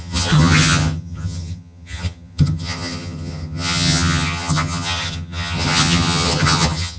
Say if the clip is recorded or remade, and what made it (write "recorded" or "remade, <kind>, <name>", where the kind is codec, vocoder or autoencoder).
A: remade, vocoder, HiFi-GAN